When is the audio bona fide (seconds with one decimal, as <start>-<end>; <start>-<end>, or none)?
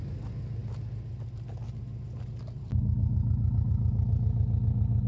0.0-5.1